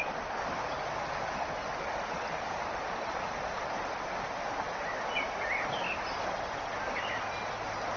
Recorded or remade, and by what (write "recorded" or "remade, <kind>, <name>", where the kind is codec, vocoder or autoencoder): recorded